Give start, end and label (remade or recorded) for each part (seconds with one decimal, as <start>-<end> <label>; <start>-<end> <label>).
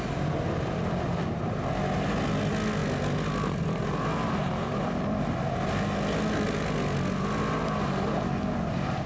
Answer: 0.0-9.1 recorded